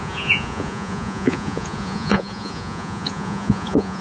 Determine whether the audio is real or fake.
fake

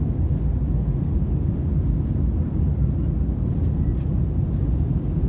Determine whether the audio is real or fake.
real